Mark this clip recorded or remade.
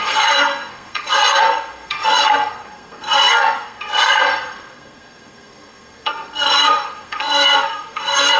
remade